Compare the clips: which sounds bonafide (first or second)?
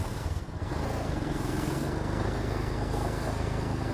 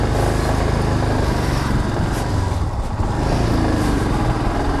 second